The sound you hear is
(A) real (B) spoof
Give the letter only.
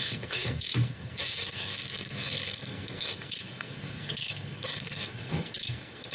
B